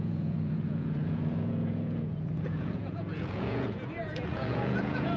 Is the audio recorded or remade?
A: remade